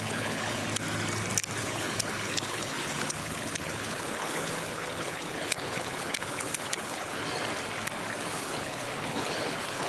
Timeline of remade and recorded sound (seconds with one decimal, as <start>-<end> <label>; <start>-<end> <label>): 0.0-0.6 remade; 0.6-1.6 recorded; 1.6-7.2 remade; 7.2-8.2 recorded; 8.2-9.9 remade